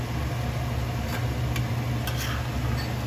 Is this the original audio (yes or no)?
yes